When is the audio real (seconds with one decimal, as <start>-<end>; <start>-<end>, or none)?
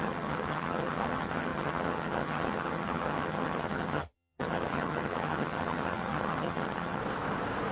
7.0-7.7